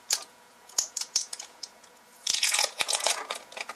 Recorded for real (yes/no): no